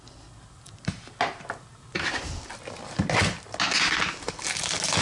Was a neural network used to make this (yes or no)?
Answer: no